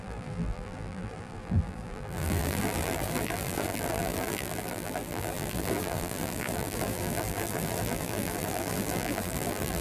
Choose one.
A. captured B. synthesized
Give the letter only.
B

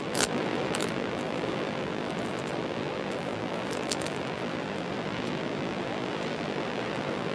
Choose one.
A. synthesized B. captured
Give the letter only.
A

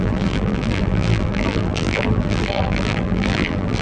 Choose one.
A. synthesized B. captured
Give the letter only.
A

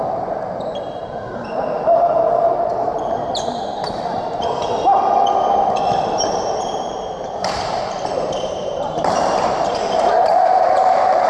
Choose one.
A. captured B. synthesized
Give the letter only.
B